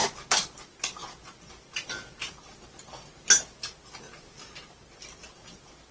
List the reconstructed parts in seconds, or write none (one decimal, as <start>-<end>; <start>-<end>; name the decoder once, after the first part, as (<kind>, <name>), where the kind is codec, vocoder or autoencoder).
none